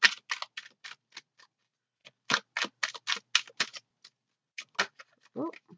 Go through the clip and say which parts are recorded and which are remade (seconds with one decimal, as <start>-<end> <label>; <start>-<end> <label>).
0.0-5.8 recorded